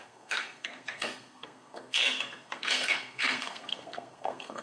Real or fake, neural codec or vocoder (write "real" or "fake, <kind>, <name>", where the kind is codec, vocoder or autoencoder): fake, codec, SNAC